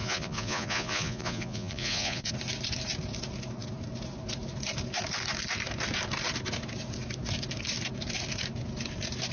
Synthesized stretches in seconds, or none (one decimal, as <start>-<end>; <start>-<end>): 0.0-2.3